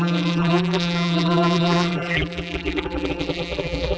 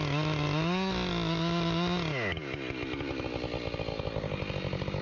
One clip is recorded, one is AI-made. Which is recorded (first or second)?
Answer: second